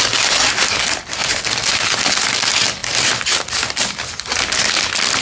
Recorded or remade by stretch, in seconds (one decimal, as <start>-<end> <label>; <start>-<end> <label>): 0.0-1.2 recorded; 1.2-1.9 remade; 1.9-5.2 recorded